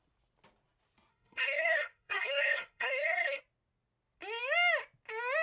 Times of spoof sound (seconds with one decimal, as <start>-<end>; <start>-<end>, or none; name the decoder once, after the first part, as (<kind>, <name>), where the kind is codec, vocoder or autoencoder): 1.1-3.4 (codec, SNAC)